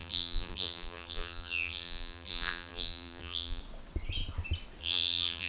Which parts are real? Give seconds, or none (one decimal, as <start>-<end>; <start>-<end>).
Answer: 3.6-4.8